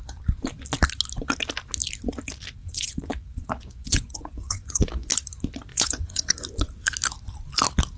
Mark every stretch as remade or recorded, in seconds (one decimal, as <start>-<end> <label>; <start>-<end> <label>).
0.0-2.6 recorded; 2.6-5.1 remade; 5.1-5.7 recorded; 5.7-6.3 remade; 6.3-8.0 recorded